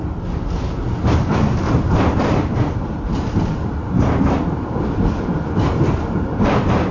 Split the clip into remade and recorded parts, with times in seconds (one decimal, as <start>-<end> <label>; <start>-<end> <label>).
0.0-1.3 recorded; 1.3-5.4 remade; 5.4-6.9 recorded